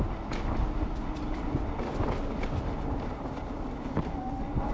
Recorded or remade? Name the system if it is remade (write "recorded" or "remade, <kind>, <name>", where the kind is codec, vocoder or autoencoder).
recorded